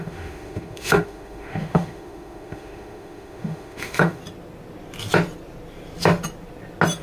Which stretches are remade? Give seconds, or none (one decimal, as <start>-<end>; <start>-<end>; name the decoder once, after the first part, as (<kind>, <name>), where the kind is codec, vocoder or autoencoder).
0.0-4.2 (autoencoder, DAC-VAE)